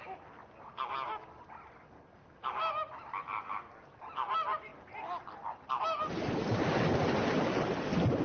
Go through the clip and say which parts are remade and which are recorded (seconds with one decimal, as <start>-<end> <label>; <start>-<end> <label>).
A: 0.0-8.2 recorded